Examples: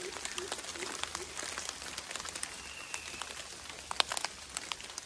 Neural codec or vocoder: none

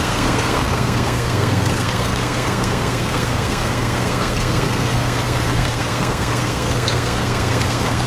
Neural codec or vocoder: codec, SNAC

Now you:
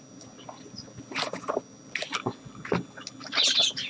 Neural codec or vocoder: none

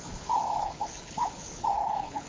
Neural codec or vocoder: codec, HILCodec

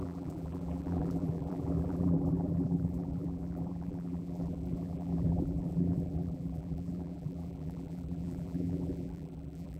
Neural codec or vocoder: vocoder, BigVGAN v2